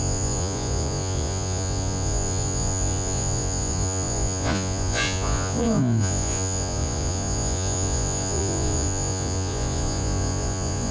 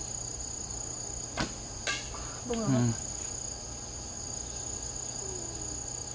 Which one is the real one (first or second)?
second